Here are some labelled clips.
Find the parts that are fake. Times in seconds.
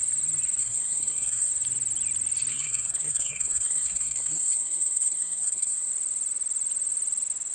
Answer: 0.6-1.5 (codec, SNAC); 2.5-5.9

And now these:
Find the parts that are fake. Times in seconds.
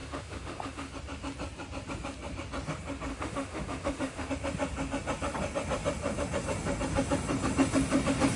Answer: 0.0-0.9 (autoencoder, DAC-VAE); 3.1-4.3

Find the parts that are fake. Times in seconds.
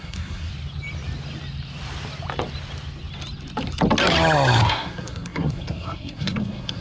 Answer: 0.0-0.5 (codec, SNAC); 4.6-6.8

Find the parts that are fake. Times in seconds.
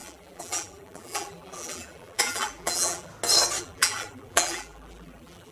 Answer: 0.0-3.1 (vocoder, BigVGAN v2); 3.6-5.5